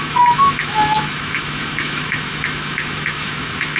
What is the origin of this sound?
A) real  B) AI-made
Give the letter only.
B